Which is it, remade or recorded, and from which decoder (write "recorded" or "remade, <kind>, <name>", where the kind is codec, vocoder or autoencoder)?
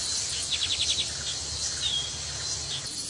recorded